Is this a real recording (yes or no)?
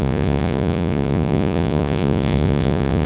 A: no